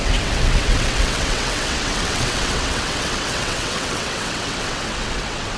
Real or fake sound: fake